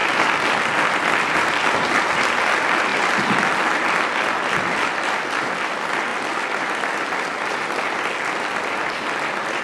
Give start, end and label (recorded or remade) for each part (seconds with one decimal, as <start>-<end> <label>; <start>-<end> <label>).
0.0-9.6 recorded